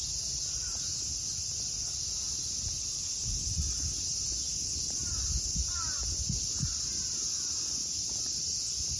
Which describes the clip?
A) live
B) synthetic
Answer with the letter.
A